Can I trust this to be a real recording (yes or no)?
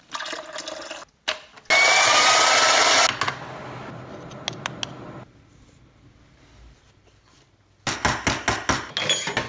yes